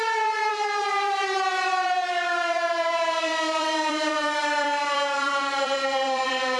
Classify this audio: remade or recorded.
remade